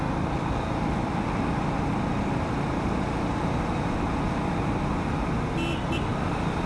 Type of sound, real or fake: real